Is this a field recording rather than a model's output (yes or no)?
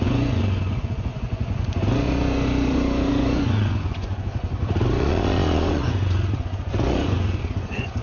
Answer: no